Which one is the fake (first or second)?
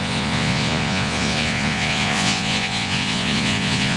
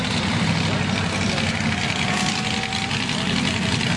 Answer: first